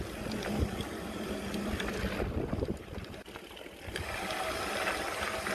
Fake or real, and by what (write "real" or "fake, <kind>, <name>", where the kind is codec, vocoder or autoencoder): real